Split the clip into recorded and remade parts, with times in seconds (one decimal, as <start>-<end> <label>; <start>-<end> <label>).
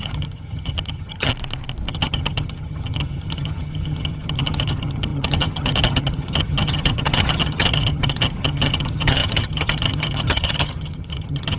0.0-1.3 remade; 1.3-1.9 recorded; 1.9-11.6 remade